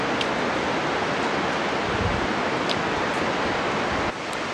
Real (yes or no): no